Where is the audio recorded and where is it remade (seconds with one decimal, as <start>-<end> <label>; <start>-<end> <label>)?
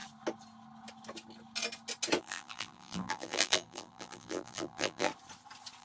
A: 0.0-2.2 recorded; 2.2-5.1 remade; 5.1-5.8 recorded